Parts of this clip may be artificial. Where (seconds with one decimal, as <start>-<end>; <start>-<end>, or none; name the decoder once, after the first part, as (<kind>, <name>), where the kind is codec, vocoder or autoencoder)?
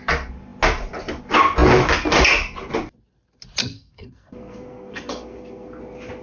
3.6-5.8 (codec, SNAC)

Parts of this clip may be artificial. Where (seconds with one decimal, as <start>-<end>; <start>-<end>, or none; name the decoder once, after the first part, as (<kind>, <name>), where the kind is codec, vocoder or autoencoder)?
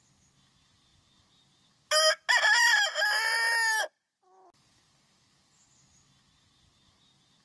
none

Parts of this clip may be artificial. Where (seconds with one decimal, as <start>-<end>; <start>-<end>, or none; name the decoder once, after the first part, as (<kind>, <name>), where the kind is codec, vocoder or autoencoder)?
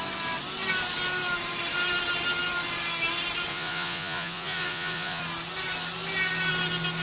3.5-5.2 (vocoder, Vocos)